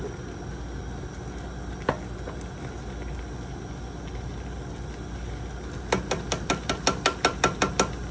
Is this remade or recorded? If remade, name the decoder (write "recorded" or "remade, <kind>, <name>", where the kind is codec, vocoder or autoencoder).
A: recorded